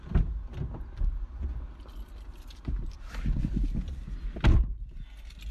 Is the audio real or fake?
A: real